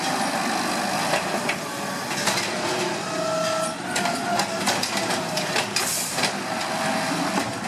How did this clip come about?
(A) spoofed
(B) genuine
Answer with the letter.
B